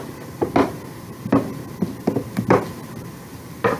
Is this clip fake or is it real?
real